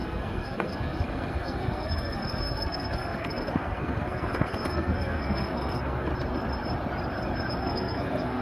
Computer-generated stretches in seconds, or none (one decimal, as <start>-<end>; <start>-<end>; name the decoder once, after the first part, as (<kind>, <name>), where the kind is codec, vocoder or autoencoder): 0.0-6.1 (codec, SNAC); 7.6-8.4